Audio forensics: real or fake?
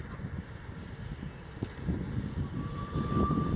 fake